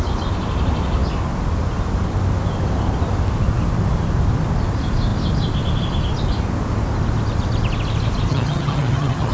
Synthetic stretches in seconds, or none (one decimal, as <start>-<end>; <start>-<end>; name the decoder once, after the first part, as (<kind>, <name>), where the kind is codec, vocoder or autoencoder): 8.3-9.3 (vocoder, HiFi-GAN)